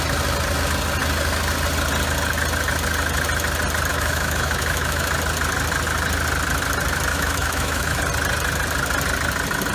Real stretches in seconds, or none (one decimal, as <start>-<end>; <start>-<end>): 0.0-3.9; 5.1-7.1; 8.0-9.7